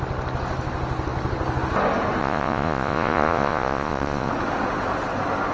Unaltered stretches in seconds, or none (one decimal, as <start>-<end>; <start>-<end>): 0.0-2.2; 4.3-5.5